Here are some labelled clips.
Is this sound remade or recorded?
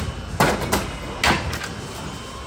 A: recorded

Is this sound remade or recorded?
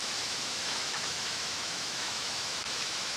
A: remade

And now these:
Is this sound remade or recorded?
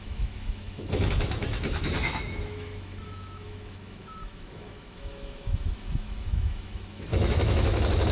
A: remade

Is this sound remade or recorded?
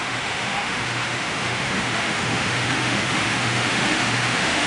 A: remade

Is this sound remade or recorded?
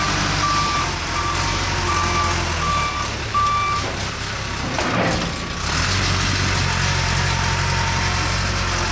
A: recorded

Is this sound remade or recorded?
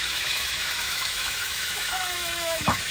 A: remade